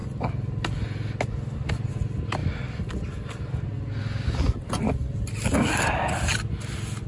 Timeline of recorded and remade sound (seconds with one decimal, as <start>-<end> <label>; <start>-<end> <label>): 0.0-7.1 recorded